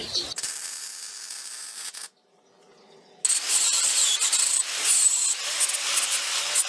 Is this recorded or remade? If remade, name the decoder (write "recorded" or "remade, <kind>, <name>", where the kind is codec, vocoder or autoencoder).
recorded